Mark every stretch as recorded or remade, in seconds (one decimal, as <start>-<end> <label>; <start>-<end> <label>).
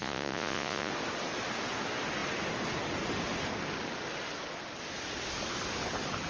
0.0-0.9 remade; 0.9-6.3 recorded